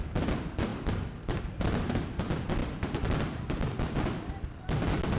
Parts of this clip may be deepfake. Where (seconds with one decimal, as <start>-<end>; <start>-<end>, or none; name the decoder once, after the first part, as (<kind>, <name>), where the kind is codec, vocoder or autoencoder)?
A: none